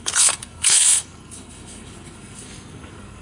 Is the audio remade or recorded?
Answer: remade